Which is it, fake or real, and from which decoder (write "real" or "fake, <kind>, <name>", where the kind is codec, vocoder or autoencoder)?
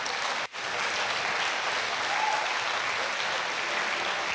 real